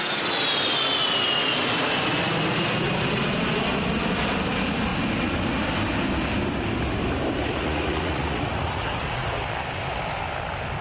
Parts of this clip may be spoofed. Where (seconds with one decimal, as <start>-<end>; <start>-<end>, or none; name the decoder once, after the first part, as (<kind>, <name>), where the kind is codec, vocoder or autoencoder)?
7.6-9.4 (vocoder, Vocos)